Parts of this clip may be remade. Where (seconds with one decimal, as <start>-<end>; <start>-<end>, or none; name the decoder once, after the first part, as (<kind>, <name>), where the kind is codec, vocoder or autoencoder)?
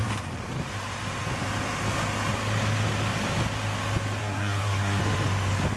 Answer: 4.2-5.0 (codec, SNAC)